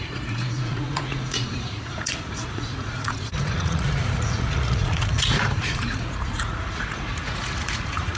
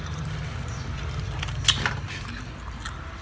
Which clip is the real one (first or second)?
second